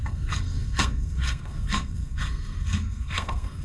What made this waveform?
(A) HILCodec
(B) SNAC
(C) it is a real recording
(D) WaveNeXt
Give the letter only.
B